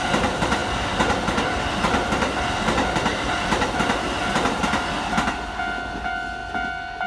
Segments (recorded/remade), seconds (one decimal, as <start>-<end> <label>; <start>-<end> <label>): 0.0-7.1 recorded